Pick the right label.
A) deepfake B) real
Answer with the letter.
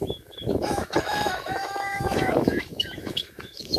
A